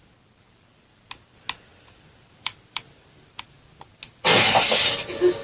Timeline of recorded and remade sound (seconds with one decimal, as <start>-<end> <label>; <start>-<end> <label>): 0.0-1.7 recorded; 1.7-4.9 remade; 4.9-5.4 recorded